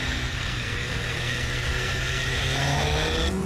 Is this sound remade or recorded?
remade